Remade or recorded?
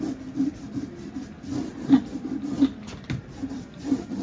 recorded